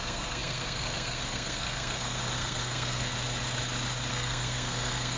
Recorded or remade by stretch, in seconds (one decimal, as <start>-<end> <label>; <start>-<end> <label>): 0.0-3.1 remade; 3.1-4.1 recorded; 4.1-5.2 remade